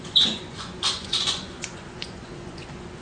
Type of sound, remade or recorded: remade